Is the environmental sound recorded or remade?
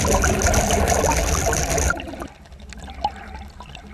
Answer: recorded